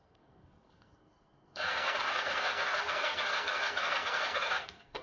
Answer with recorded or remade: remade